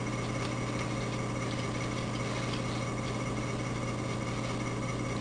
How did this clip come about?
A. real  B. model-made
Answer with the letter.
A